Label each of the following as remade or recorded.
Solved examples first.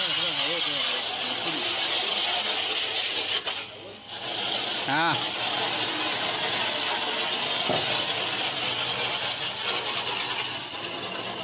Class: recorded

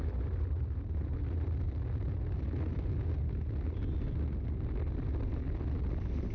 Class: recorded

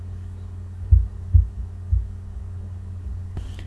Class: remade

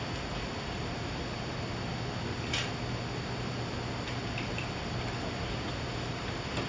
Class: recorded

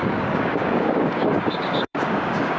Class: remade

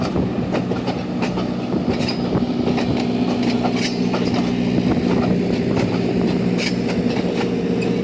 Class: recorded